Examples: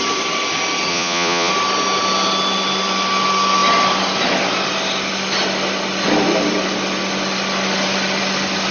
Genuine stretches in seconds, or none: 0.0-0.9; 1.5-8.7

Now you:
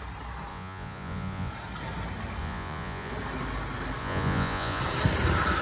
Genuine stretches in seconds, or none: 0.0-0.5; 1.5-2.4; 3.1-4.0; 4.8-5.6

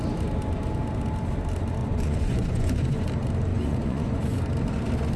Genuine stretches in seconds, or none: 0.0-1.8; 3.1-3.5; 4.4-5.2

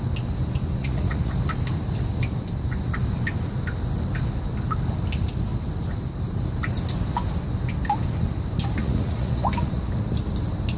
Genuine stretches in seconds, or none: 0.0-0.8; 1.3-8.8; 9.8-10.8

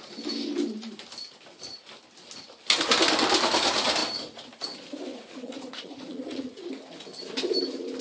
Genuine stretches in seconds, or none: 0.0-5.1; 6.7-8.0